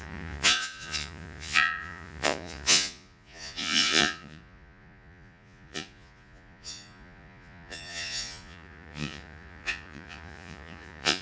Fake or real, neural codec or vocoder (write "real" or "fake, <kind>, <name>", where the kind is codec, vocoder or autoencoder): fake, vocoder, Vocos